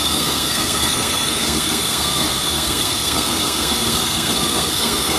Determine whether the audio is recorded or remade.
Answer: remade